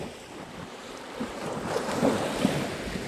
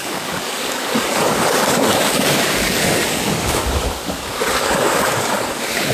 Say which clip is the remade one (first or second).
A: second